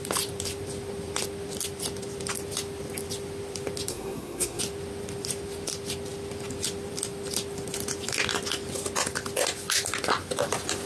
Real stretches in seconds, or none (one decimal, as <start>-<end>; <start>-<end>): 0.0-3.9; 4.6-10.9